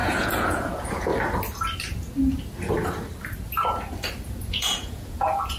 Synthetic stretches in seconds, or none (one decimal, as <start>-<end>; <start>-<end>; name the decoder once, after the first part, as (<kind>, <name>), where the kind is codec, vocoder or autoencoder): 0.0-1.1 (vocoder, Vocos); 4.5-5.6